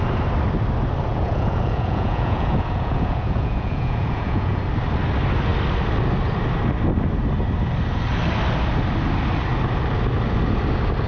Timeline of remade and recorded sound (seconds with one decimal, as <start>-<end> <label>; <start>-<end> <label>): 0.0-1.1 recorded; 1.1-4.6 remade; 4.6-11.1 recorded